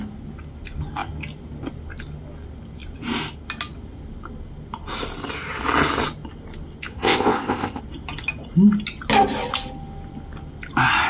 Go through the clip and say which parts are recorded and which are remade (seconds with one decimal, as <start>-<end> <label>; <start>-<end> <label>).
0.0-6.9 recorded; 6.9-7.8 remade; 7.8-11.1 recorded